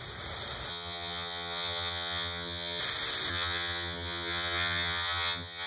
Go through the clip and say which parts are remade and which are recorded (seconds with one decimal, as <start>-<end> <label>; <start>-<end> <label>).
0.0-0.7 recorded; 0.7-2.8 remade; 2.8-3.3 recorded; 3.3-5.7 remade